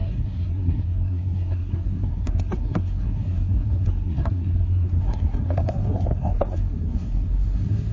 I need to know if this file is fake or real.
fake